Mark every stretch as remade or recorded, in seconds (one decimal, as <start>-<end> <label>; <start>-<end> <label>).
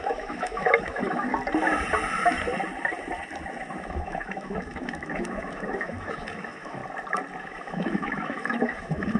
0.0-1.3 remade; 1.3-3.7 recorded; 3.7-6.8 remade; 6.8-7.4 recorded; 7.4-9.2 remade